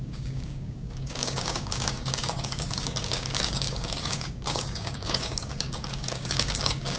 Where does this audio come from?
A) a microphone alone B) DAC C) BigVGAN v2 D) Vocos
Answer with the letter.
B